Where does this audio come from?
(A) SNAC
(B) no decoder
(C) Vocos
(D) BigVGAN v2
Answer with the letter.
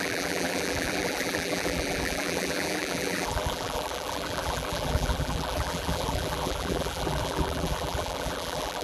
D